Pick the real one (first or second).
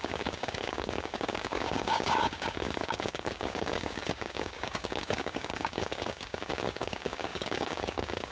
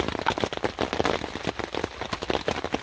second